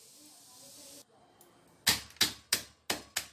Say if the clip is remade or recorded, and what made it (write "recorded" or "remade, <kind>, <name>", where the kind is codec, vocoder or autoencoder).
recorded